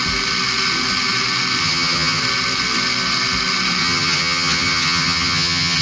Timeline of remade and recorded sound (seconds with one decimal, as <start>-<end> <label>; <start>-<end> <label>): 0.0-1.6 recorded; 1.6-2.2 remade; 2.2-3.8 recorded; 3.8-5.8 remade